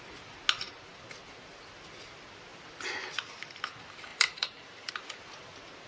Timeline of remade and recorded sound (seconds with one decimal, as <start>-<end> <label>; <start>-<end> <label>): 0.0-4.1 recorded; 4.1-4.9 remade; 4.9-5.9 recorded